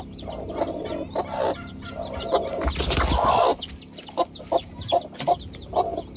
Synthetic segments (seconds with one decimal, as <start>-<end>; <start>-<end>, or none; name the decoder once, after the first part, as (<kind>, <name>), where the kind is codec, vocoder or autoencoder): none